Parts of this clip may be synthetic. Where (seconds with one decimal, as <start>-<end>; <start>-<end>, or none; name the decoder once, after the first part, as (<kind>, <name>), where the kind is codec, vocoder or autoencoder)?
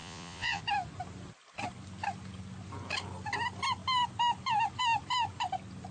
0.0-0.6 (vocoder, Vocos)